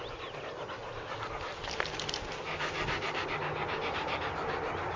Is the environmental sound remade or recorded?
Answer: recorded